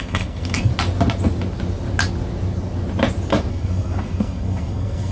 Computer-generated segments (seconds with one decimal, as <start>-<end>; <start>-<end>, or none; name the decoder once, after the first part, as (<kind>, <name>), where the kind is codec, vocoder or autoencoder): 0.0-0.7 (codec, SNAC); 3.5-5.1